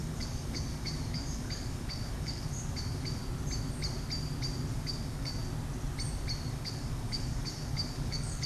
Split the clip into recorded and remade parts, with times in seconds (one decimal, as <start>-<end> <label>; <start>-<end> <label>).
0.0-3.2 remade; 3.2-4.7 recorded; 4.7-5.4 remade; 5.4-6.5 recorded; 6.5-8.5 remade